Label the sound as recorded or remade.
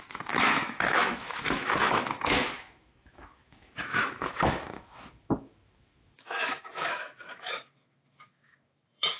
remade